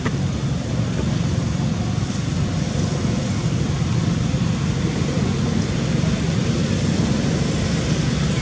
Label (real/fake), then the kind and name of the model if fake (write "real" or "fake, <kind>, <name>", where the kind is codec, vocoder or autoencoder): real